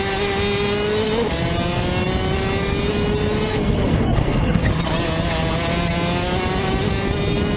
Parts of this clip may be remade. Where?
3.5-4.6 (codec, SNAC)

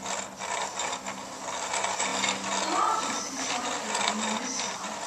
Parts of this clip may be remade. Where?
none

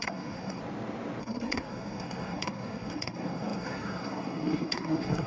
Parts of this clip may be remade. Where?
0.0-0.6 (codec, SNAC); 1.2-5.3

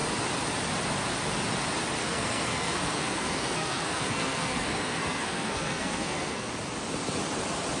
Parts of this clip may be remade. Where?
2.0-6.5 (codec, SNAC)

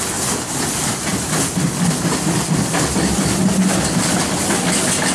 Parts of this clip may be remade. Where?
none

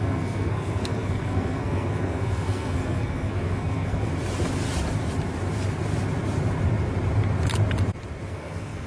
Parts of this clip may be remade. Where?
0.0-4.1 (codec, SNAC); 8.3-8.9

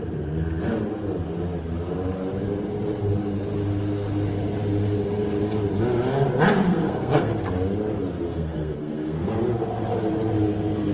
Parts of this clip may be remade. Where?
6.7-7.3 (codec, SNAC); 8.3-9.3

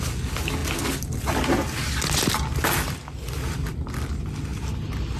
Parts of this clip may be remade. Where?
none